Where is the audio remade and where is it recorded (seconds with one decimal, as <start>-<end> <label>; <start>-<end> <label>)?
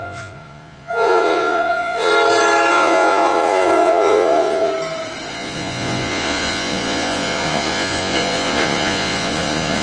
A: 0.0-2.1 remade; 2.1-2.7 recorded; 2.7-4.7 remade; 4.7-5.3 recorded; 5.3-9.8 remade